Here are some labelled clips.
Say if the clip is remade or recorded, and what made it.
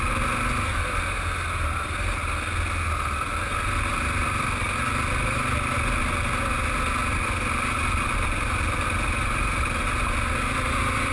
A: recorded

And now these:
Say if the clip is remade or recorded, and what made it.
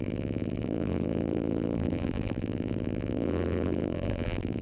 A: remade, vocoder, BigVGAN v2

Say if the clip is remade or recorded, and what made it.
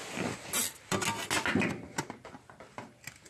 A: recorded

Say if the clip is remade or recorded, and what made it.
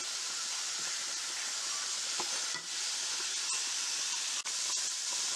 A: recorded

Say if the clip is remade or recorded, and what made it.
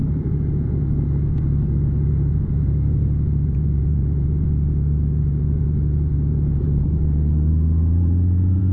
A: remade, vocoder, Vocos